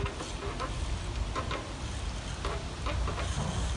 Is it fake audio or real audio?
real